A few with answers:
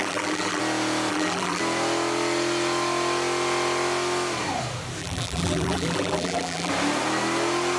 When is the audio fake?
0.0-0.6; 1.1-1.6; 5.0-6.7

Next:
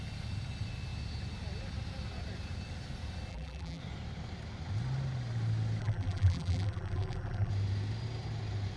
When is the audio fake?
3.3-3.8; 5.8-7.5

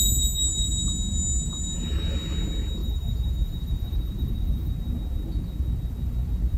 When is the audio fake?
2.8-4.7